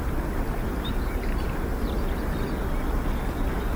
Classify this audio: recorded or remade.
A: recorded